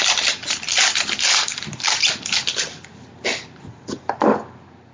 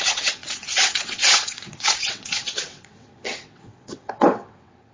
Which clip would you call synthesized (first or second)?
second